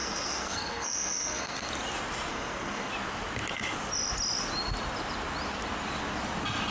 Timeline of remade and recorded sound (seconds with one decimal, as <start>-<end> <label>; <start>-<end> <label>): 0.0-1.7 remade; 1.7-2.3 recorded; 2.3-2.9 remade; 2.9-6.7 recorded